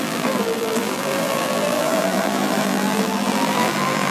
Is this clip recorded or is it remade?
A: remade